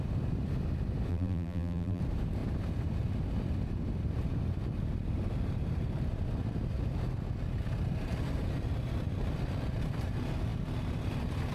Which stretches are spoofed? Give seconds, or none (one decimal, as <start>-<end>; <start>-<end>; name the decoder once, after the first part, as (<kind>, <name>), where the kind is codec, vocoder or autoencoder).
1.1-2.0 (vocoder, BigVGAN v2)